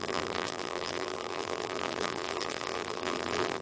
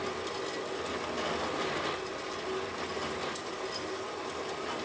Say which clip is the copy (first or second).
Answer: first